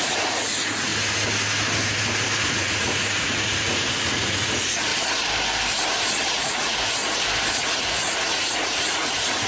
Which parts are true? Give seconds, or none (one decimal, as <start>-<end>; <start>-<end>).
0.9-2.5; 4.9-6.3; 7.0-7.5